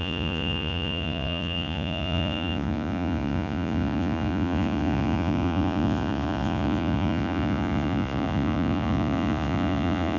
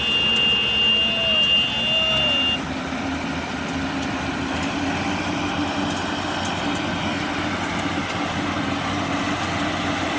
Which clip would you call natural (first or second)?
second